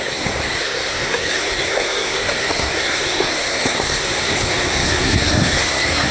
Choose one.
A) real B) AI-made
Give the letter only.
B